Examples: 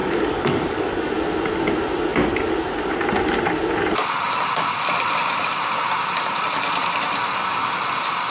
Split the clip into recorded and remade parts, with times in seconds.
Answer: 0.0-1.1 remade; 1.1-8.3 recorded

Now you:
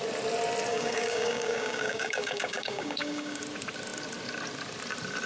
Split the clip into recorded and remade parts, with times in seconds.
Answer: 0.0-0.7 recorded; 0.7-3.4 remade; 3.4-5.3 recorded